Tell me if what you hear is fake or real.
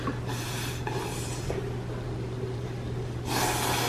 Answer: real